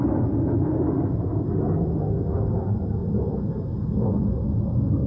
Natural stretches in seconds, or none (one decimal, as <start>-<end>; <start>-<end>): 0.0-1.9; 2.5-5.1